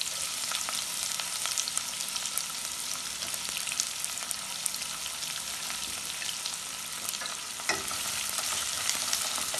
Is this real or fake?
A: real